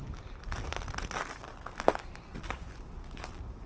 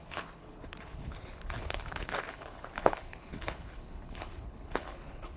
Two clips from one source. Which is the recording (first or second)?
first